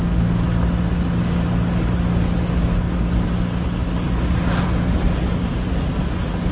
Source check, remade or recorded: recorded